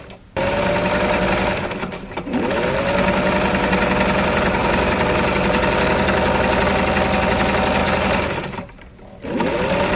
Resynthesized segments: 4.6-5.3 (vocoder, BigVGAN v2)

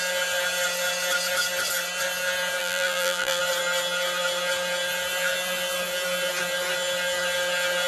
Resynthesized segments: 2.6-3.4 (vocoder, BigVGAN v2)

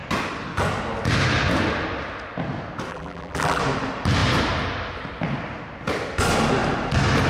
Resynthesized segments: 2.9-3.6 (vocoder, BigVGAN v2)

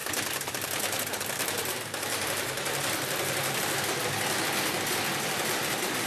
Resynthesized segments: 0.0-3.7 (vocoder, BigVGAN v2)

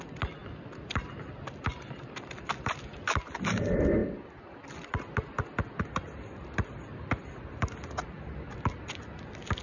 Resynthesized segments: 0.4-3.3 (vocoder, BigVGAN v2); 4.0-4.7; 6.9-8.5